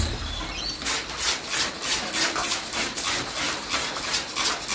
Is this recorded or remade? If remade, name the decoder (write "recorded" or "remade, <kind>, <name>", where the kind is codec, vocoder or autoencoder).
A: recorded